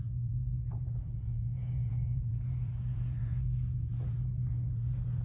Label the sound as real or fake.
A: fake